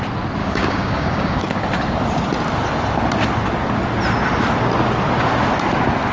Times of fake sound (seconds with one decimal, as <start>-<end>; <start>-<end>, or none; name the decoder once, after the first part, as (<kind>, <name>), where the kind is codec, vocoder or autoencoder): 0.4-1.4 (codec, DAC)